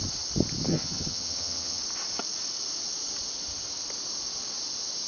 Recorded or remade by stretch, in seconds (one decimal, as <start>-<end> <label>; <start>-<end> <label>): 0.0-0.7 recorded; 0.7-1.8 remade; 1.8-5.1 recorded